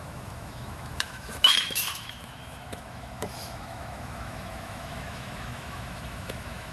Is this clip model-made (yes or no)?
yes